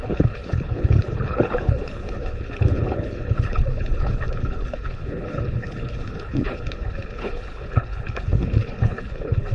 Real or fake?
fake